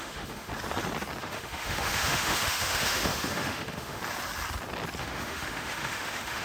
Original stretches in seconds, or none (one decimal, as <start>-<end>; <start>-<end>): 0.5-1.2; 4.0-5.0